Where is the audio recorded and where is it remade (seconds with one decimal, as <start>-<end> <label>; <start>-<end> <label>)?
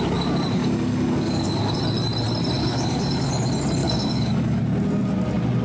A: 0.0-0.6 recorded; 0.6-1.8 remade; 1.8-2.6 recorded; 2.6-3.3 remade; 3.3-3.8 recorded; 3.8-4.6 remade; 4.6-5.6 recorded